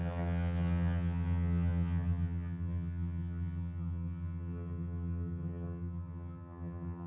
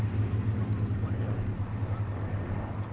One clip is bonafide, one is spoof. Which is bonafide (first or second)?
second